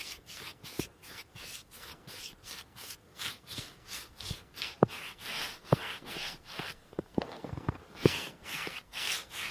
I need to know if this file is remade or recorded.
remade